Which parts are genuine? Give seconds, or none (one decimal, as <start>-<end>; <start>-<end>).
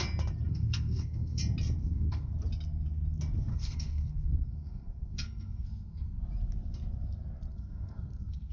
0.0-0.5; 1.4-1.8; 2.3-3.5; 6.2-7.5